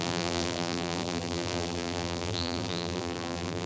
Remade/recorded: remade